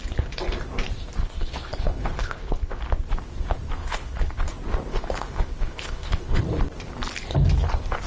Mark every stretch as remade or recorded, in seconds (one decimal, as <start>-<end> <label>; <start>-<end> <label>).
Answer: 0.0-1.2 recorded; 1.2-2.8 remade; 2.8-3.8 recorded; 3.8-4.5 remade; 4.5-4.9 recorded; 4.9-6.4 remade; 6.4-8.1 recorded